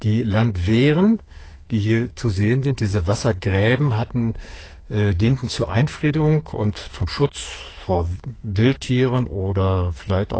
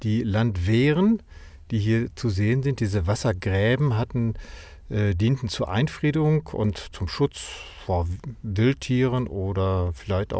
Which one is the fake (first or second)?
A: first